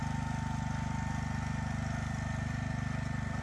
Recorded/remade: recorded